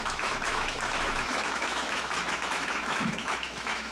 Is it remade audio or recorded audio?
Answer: remade